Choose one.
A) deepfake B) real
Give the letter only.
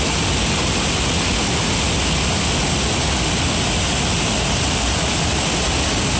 B